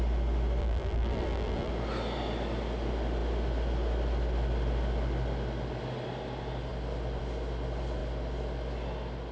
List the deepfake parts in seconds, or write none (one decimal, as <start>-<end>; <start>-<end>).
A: 0.6-1.7